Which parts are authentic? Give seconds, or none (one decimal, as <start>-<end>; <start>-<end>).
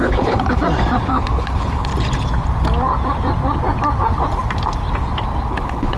0.6-1.1; 1.9-5.5